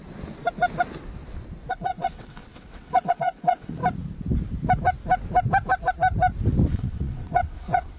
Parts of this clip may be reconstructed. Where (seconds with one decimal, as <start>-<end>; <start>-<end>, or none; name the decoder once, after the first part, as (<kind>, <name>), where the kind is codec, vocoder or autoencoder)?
1.7-3.8 (vocoder, WaveNeXt); 6.7-8.0